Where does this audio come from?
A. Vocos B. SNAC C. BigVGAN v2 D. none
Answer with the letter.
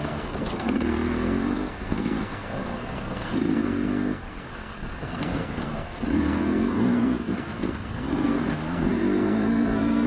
B